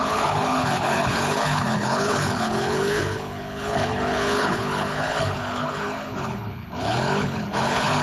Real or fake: fake